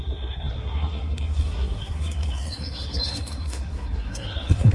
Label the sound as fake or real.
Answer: fake